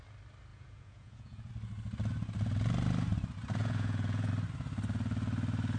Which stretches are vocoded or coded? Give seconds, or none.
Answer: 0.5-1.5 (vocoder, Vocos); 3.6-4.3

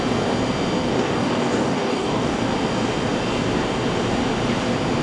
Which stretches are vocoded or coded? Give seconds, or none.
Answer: 0.8-2.4 (codec, DAC)

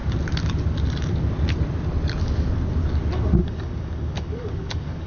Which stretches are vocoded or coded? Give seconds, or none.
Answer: 3.4-5.1 (codec, DAC)

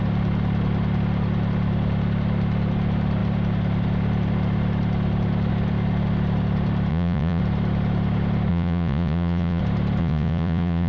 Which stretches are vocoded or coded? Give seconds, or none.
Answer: 6.9-7.4 (vocoder, Vocos); 8.5-9.6; 10.0-10.9

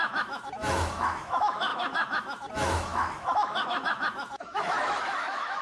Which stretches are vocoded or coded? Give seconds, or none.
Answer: 0.0-5.6 (autoencoder, DAC-VAE)

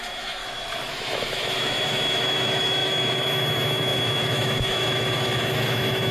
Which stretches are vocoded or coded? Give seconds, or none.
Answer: 0.0-0.4 (autoencoder, DAC-VAE); 0.9-6.1

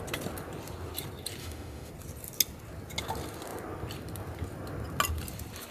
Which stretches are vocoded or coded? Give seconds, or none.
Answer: 1.4-1.9 (autoencoder, DAC-VAE)

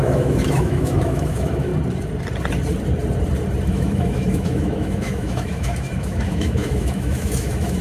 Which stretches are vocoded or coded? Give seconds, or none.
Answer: 0.0-1.7 (autoencoder, DAC-VAE); 3.7-7.8